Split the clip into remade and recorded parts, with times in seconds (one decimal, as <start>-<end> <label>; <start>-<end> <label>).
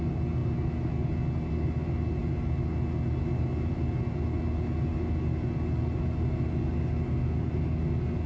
0.0-8.3 recorded